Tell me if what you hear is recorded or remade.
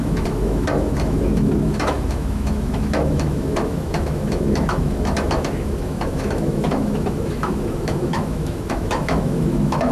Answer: remade